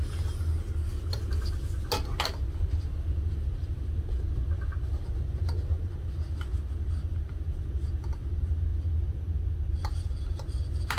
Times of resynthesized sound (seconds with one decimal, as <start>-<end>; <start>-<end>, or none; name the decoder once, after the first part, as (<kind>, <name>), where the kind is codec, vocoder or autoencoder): none